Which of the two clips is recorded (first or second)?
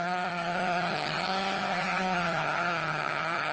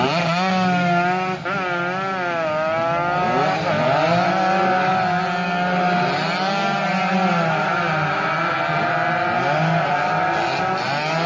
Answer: second